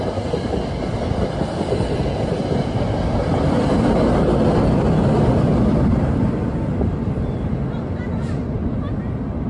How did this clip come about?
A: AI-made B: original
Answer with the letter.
B